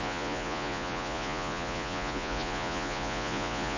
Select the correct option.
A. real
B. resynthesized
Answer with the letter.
B